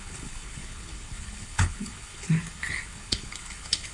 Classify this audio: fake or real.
fake